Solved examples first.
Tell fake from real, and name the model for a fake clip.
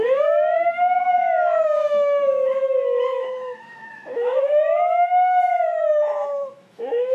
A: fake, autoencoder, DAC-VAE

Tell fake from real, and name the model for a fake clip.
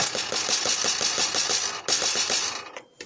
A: real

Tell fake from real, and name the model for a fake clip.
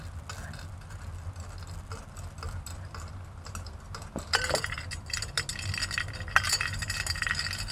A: real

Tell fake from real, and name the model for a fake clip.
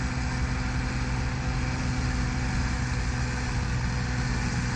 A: real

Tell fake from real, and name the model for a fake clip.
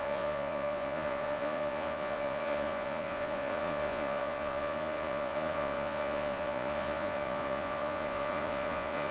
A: fake, vocoder, Vocos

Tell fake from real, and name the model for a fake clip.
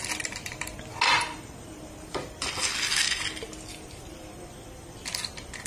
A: real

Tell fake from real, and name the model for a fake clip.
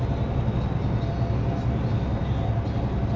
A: real